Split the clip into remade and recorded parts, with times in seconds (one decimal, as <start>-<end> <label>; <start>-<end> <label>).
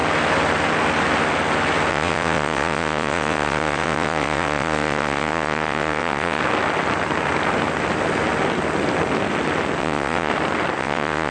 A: 0.0-1.9 recorded; 1.9-6.4 remade; 6.4-9.8 recorded; 9.8-10.3 remade; 10.3-10.8 recorded; 10.8-11.3 remade